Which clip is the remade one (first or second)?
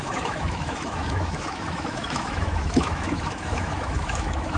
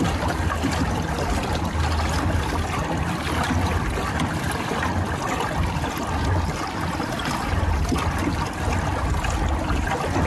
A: first